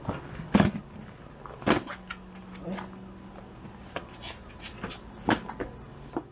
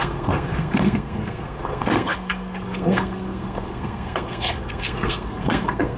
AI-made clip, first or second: second